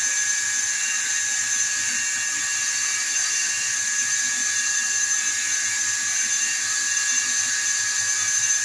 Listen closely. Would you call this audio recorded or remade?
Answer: recorded